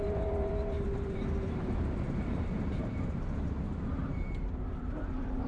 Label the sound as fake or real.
fake